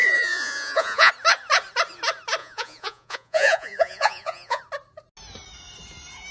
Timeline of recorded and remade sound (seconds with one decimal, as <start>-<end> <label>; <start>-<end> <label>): 0.0-1.1 remade; 1.1-2.4 recorded; 2.4-4.6 remade; 4.6-6.3 recorded